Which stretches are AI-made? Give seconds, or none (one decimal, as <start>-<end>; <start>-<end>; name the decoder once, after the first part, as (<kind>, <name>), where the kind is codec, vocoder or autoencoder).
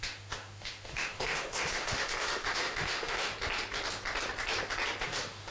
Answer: 0.0-3.3 (autoencoder, DAC-VAE); 5.0-5.5